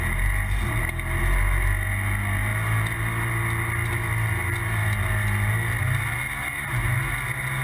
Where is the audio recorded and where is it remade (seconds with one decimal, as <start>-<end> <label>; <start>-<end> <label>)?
0.0-7.6 recorded